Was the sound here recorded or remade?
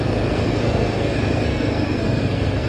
remade